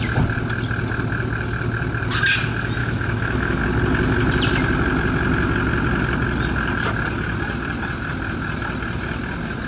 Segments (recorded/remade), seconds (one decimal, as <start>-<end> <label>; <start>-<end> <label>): 0.0-2.8 recorded; 2.8-3.6 remade; 3.6-9.7 recorded